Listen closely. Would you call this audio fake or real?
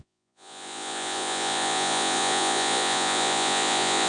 fake